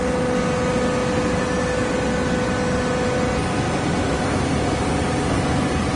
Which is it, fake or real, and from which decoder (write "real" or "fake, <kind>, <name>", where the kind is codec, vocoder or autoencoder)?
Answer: real